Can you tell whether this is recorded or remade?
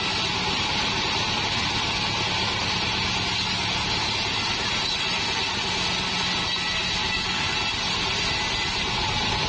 recorded